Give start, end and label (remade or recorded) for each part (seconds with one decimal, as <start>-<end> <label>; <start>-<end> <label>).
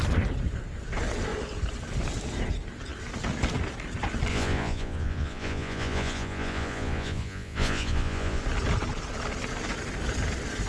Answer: 0.0-4.3 recorded; 4.3-8.4 remade; 8.4-10.7 recorded